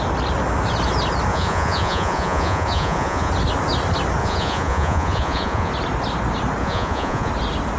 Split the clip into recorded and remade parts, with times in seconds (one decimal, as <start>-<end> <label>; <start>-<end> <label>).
0.0-1.3 recorded; 1.3-3.3 remade; 3.3-4.2 recorded; 4.2-5.7 remade; 5.7-6.6 recorded; 6.6-7.3 remade; 7.3-7.8 recorded